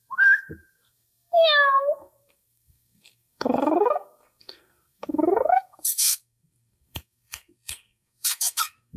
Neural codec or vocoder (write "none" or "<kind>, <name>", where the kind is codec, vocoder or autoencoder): codec, SNAC